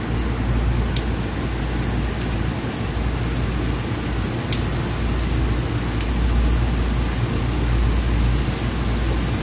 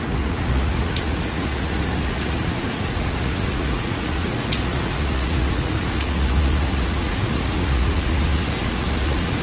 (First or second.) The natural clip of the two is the first